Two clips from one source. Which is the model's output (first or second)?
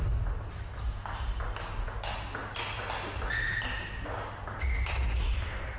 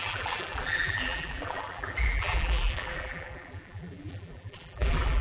second